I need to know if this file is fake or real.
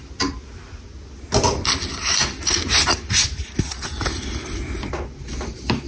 real